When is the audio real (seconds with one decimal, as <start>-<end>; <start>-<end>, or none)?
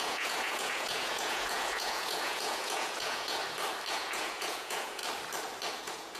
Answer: 3.4-3.9; 5.0-5.8